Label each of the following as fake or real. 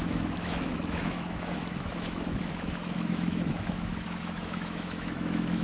fake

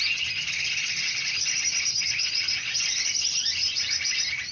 real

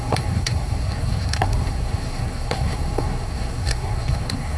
fake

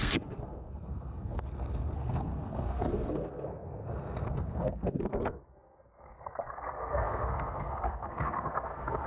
fake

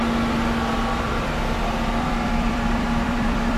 fake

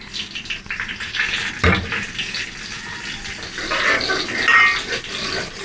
real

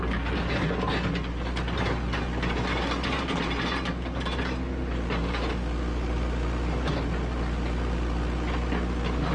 real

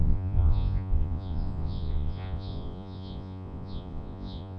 fake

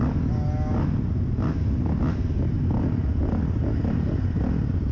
real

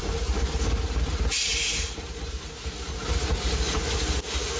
real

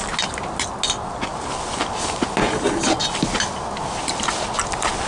real